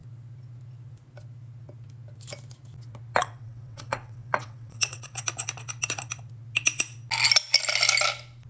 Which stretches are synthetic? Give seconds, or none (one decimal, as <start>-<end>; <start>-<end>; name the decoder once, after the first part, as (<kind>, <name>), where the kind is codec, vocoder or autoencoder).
3.2-5.2 (vocoder, WaveNeXt)